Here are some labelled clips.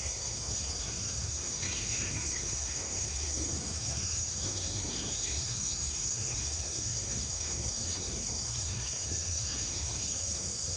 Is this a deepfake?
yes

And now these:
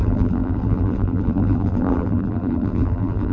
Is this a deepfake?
yes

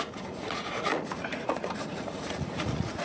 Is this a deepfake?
yes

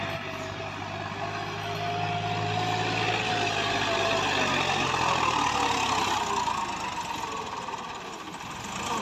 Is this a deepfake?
no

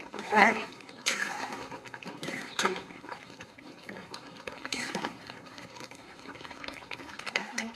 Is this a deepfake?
yes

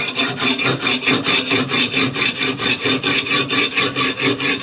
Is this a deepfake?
no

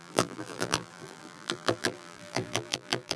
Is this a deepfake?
yes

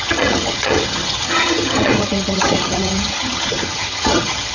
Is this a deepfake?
yes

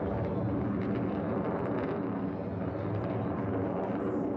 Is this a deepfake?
no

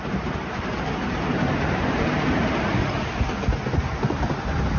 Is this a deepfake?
no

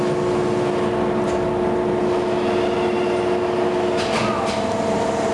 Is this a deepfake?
no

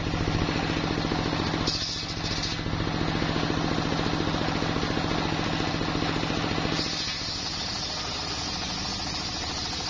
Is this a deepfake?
no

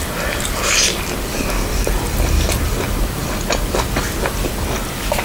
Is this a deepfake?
no